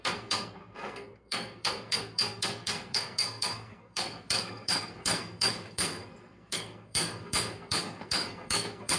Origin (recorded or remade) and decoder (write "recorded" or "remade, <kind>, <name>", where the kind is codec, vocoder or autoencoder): remade, codec, SNAC